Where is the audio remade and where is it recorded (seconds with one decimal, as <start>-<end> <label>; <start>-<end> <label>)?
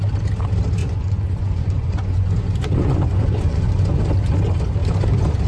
0.0-0.8 recorded; 0.8-4.0 remade; 4.0-5.5 recorded